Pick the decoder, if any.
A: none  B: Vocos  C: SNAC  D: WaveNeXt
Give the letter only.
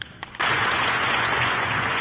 B